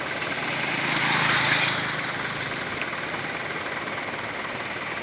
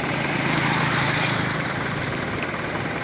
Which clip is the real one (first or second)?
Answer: first